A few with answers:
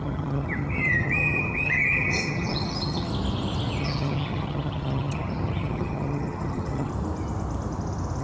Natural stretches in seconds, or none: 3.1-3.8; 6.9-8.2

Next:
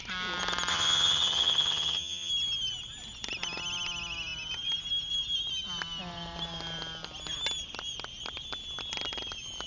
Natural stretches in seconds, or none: 0.0-0.7; 2.3-9.7

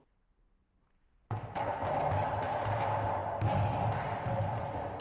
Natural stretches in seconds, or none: 0.0-5.0

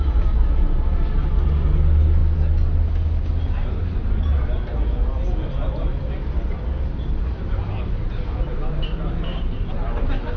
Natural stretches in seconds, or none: 0.0-10.4

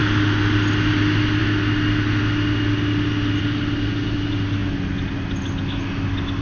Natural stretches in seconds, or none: 0.0-6.4

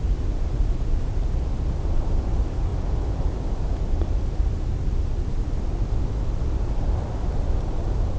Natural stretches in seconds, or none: 0.0-8.2